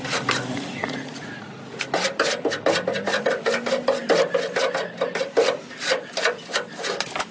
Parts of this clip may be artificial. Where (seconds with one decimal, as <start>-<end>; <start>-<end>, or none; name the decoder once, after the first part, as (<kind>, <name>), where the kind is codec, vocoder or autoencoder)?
0.8-1.9 (vocoder, Vocos)